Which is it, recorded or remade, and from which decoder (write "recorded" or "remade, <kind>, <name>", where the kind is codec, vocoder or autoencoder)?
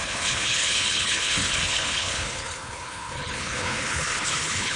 remade, codec, HILCodec